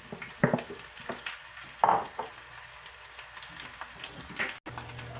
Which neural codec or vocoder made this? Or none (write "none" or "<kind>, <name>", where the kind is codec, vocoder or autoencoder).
none